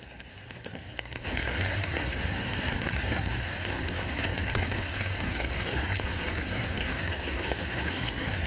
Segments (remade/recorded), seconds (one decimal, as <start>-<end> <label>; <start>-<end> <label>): 0.0-8.5 remade

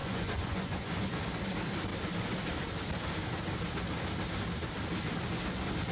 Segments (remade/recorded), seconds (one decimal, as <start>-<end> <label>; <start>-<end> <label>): 0.0-0.9 remade; 0.9-5.9 recorded

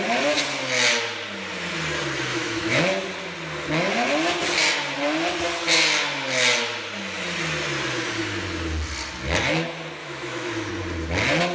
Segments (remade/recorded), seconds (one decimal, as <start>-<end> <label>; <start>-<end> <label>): 0.0-2.3 recorded; 2.3-2.8 remade; 2.8-10.0 recorded; 10.0-10.7 remade; 10.7-11.5 recorded

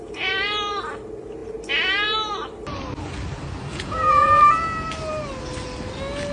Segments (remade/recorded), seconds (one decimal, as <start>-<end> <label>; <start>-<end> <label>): 0.0-3.7 recorded; 3.7-4.4 remade; 4.4-6.3 recorded